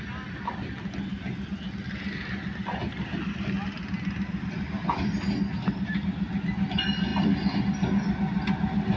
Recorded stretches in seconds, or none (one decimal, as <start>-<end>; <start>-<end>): 0.0-9.0